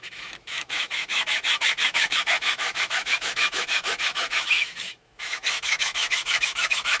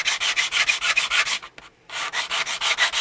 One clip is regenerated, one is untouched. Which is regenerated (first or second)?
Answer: first